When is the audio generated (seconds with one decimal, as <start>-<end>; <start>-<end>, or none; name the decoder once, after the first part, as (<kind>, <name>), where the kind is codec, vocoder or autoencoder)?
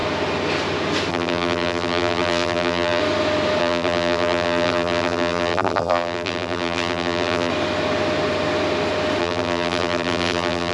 1.1-3.0 (vocoder, BigVGAN v2); 3.6-7.5; 9.2-10.7